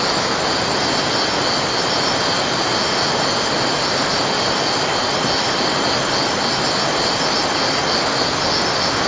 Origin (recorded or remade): recorded